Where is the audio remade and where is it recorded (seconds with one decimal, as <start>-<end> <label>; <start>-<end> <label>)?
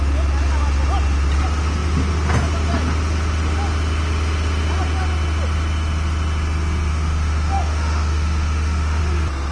0.0-6.9 recorded; 6.9-9.0 remade; 9.0-9.5 recorded